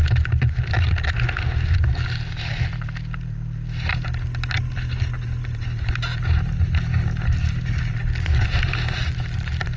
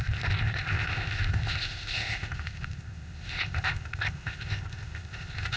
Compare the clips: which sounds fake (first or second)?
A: second